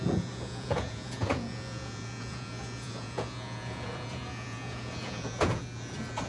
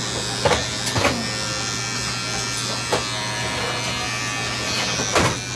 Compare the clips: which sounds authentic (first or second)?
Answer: second